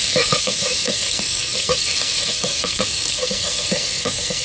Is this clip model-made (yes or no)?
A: yes